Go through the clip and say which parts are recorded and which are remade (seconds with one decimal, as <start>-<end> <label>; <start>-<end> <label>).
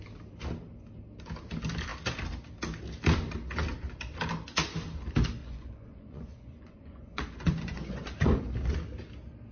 0.0-5.4 recorded; 5.4-8.4 remade; 8.4-9.5 recorded